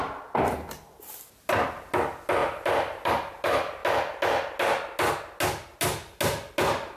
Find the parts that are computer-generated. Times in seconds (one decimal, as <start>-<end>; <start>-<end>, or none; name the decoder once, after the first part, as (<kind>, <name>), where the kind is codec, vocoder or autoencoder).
2.4-3.1 (vocoder, BigVGAN v2)